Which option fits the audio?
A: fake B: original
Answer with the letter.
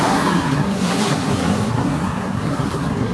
A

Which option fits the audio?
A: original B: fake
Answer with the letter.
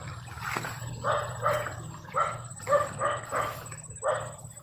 A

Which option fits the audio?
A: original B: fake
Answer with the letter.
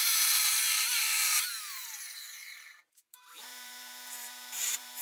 B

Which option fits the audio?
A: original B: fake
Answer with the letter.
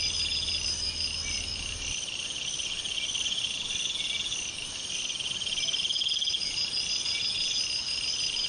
A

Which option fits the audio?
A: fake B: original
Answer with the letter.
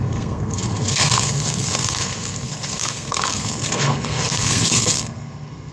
A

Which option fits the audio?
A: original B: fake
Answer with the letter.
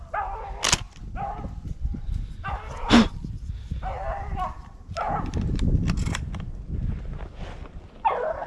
A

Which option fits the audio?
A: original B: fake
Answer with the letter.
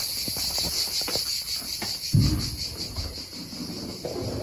A